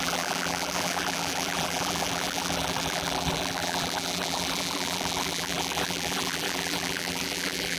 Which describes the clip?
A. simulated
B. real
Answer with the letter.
A